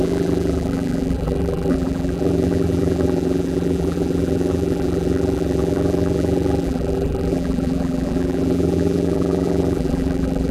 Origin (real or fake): fake